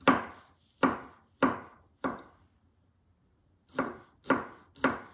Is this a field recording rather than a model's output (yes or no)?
yes